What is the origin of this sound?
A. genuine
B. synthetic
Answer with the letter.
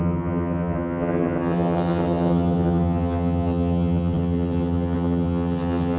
B